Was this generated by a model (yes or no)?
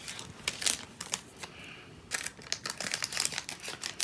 no